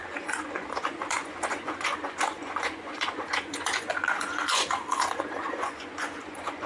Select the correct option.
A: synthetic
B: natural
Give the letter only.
A